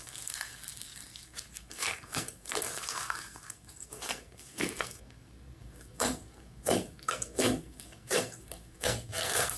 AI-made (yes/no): yes